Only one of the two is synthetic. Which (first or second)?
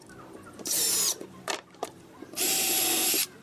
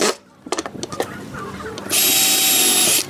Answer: first